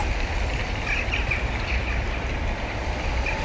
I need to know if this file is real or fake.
real